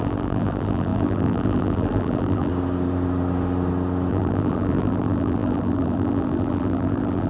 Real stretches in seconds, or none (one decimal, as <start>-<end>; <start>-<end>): 2.5-4.1